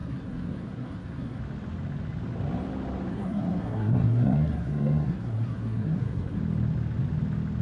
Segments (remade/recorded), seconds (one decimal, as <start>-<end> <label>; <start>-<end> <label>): 0.0-1.4 remade; 1.4-3.1 recorded; 3.1-6.4 remade; 6.4-7.6 recorded